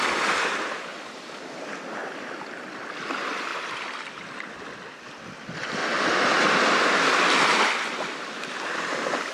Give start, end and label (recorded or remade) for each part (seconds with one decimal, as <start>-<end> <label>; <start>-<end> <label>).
0.0-5.8 recorded; 5.8-7.2 remade; 7.2-9.3 recorded